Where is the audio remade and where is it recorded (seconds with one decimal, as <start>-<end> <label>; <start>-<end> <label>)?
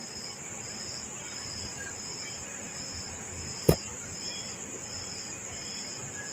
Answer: 0.0-6.3 recorded